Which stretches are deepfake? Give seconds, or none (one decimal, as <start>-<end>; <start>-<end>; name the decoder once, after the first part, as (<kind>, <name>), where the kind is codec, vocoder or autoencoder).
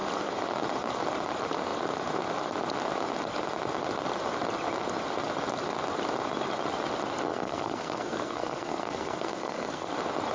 7.3-9.9 (codec, SNAC)